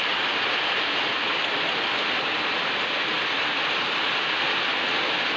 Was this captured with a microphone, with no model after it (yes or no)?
yes